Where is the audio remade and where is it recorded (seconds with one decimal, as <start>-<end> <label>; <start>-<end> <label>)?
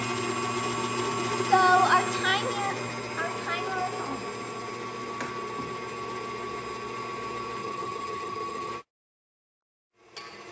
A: 0.0-7.6 recorded; 7.6-8.7 remade; 8.7-10.5 recorded